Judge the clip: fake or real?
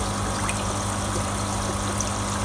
real